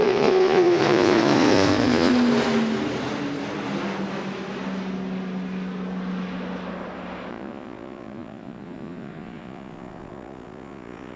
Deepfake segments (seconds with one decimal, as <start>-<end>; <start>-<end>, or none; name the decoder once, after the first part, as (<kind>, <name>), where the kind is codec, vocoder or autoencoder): 0.0-2.1 (vocoder, Vocos); 7.3-11.2

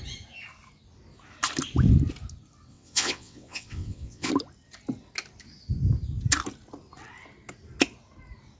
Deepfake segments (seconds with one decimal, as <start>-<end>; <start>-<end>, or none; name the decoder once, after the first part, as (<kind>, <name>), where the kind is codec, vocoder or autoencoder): 2.7-4.3 (vocoder, WaveNeXt)

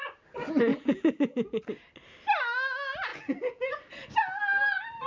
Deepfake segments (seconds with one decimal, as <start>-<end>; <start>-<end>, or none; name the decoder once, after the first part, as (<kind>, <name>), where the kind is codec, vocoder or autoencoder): 0.7-1.6 (vocoder, BigVGAN v2); 3.1-3.7

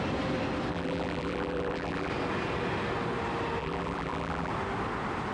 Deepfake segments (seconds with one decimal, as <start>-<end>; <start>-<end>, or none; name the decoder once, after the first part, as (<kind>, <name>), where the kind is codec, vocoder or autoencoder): 0.7-2.1 (vocoder, BigVGAN v2); 3.6-4.5

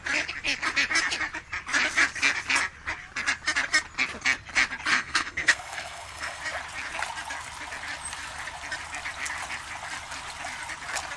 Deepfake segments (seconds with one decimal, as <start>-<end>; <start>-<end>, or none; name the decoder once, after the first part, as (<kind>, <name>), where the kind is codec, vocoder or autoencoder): 4.9-6.4 (codec, SNAC)

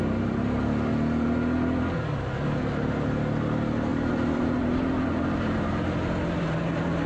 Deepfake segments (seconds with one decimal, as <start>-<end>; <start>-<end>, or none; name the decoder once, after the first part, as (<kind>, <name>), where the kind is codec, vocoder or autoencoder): 3.9-5.7 (vocoder, BigVGAN v2)

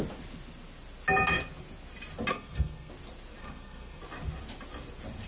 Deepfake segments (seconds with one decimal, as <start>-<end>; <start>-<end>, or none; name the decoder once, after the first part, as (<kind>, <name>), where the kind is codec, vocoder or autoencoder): 2.3-2.9 (codec, SNAC); 3.4-4.0

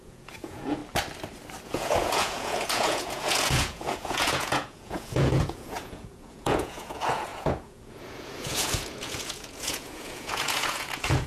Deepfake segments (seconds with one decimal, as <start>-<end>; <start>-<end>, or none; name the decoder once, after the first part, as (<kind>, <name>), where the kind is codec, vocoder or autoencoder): 0.0-0.8 (vocoder, Vocos); 1.6-11.3